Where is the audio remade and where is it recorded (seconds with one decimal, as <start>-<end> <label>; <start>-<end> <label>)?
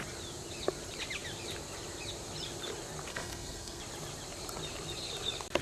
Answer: 0.0-3.1 recorded; 3.1-3.8 remade; 3.8-5.6 recorded